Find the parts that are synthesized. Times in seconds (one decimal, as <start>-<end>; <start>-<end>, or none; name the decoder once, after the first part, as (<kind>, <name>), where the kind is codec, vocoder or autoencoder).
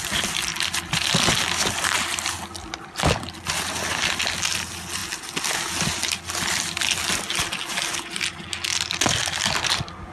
none